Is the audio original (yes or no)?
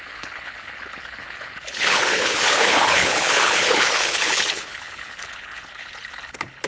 no